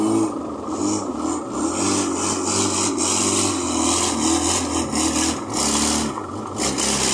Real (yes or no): yes